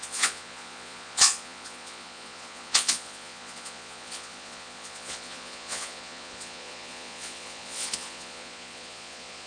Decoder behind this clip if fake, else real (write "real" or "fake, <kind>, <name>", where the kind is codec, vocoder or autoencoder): fake, vocoder, Vocos